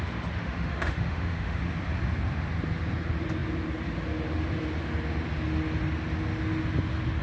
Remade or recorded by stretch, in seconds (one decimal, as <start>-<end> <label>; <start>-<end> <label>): 0.0-0.4 recorded; 0.4-1.6 remade; 1.6-7.2 recorded